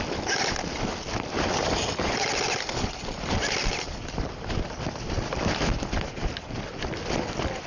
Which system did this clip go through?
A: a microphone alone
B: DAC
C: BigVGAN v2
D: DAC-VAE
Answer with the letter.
A